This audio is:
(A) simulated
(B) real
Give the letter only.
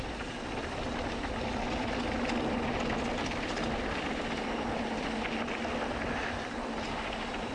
B